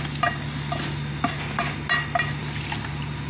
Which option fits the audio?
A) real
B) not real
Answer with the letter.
A